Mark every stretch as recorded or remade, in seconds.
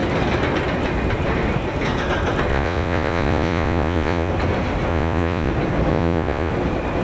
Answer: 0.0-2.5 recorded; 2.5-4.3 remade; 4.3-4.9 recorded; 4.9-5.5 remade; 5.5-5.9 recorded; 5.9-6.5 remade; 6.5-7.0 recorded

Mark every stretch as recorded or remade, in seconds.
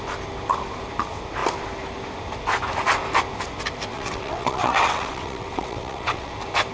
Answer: 0.0-3.9 recorded; 3.9-6.3 remade; 6.3-6.7 recorded